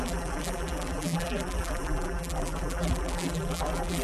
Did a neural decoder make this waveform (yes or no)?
yes